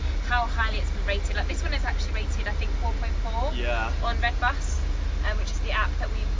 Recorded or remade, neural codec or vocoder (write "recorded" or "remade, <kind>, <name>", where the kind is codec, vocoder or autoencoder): recorded